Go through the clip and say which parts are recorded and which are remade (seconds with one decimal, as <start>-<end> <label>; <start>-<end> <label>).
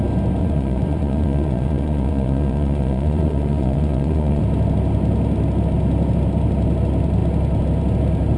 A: 0.0-0.4 recorded; 0.4-4.4 remade; 4.4-8.4 recorded